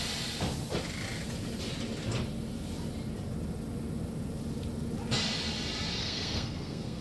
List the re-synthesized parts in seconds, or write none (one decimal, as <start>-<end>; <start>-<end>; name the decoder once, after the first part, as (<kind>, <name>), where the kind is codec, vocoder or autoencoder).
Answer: 6.0-7.0 (codec, SNAC)